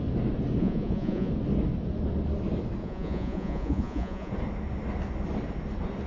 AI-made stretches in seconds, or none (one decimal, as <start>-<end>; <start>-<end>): 0.6-1.3; 2.8-4.3